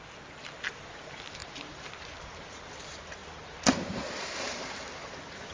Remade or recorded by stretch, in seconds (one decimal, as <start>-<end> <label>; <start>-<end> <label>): 0.0-5.5 recorded